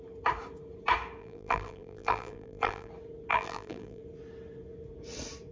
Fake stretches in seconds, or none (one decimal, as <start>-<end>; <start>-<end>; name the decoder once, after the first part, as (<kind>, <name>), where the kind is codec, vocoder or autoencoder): 1.2-2.9 (vocoder, BigVGAN v2); 3.3-4.0